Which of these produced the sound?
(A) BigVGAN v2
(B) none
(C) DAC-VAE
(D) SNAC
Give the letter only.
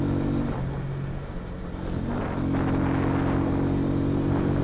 B